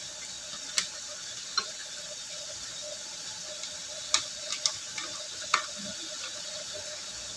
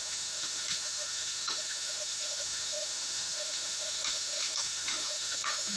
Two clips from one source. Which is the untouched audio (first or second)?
first